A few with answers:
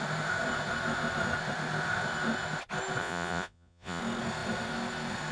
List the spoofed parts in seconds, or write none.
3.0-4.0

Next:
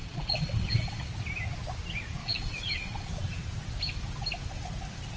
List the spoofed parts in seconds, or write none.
0.0-1.1; 2.2-3.1

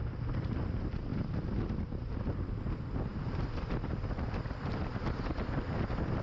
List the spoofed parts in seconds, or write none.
0.0-0.7; 3.1-5.0

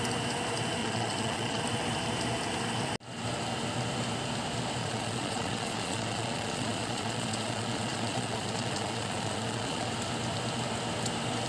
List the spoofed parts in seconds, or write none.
0.8-1.6; 4.8-9.9